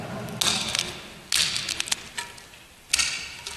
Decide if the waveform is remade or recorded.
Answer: recorded